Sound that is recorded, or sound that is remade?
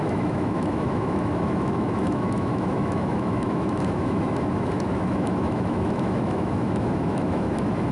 remade